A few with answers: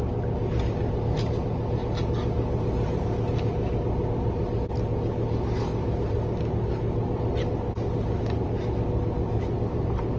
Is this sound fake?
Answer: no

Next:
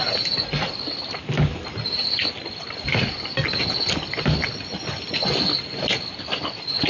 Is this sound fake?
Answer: no